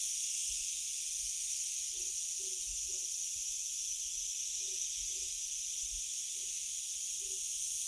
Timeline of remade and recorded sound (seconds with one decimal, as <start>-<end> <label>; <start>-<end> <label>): 0.0-1.5 recorded; 1.5-2.1 remade; 2.1-7.9 recorded

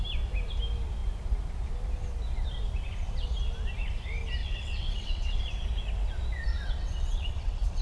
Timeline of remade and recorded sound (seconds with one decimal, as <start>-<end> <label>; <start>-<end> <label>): 0.0-4.4 recorded; 4.4-5.4 remade; 5.4-6.5 recorded; 6.5-7.8 remade

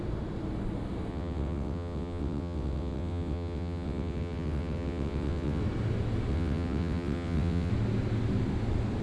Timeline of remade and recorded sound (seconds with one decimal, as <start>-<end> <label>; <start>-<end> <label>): 0.0-1.1 recorded; 1.1-5.6 remade; 5.6-6.3 recorded; 6.3-7.7 remade; 7.7-9.0 recorded

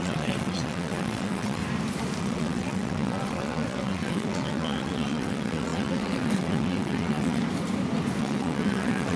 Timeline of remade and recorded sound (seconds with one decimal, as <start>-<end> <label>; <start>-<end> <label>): 0.0-1.6 remade; 1.6-2.2 recorded; 2.2-7.4 remade; 7.4-8.2 recorded; 8.2-9.2 remade

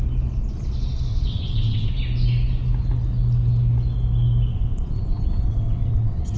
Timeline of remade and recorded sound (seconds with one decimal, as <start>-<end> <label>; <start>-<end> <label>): 0.0-1.1 recorded; 1.1-1.9 remade; 1.9-4.5 recorded; 4.5-6.4 remade

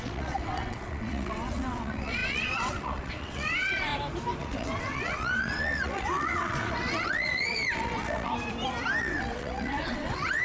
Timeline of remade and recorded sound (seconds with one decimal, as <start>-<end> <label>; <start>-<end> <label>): 0.0-3.9 remade; 3.9-4.4 recorded; 4.4-8.3 remade; 8.3-9.0 recorded; 9.0-10.4 remade

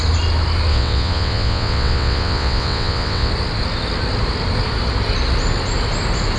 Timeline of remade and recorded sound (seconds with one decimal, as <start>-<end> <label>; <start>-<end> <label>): 0.0-0.7 recorded; 0.7-3.3 remade; 3.3-6.4 recorded